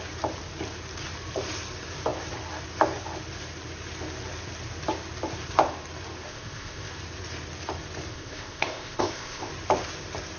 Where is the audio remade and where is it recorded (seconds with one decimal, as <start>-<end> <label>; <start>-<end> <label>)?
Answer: 0.0-6.3 recorded; 6.3-6.9 remade; 6.9-8.1 recorded; 8.1-9.5 remade; 9.5-10.4 recorded